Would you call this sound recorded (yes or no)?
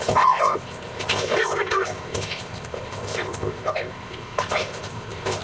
no